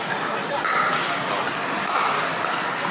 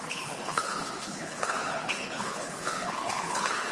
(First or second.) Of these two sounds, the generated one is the second